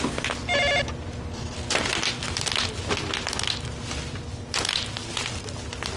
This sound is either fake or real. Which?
real